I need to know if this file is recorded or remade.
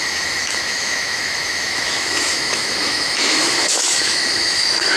remade